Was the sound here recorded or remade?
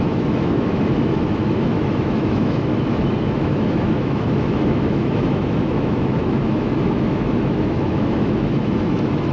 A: remade